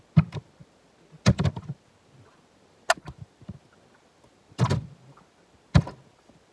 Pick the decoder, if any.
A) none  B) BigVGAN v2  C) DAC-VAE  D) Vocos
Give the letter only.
A